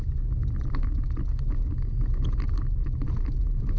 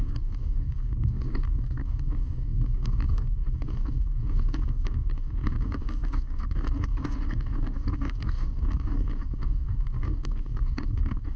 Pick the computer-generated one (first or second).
second